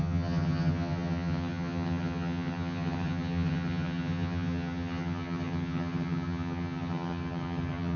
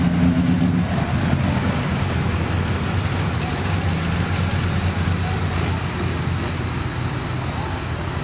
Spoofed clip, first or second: first